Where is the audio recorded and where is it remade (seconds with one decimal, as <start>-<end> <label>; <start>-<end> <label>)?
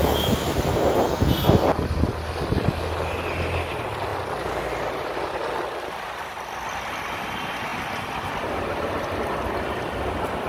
0.0-10.5 recorded